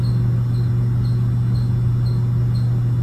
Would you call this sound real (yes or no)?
yes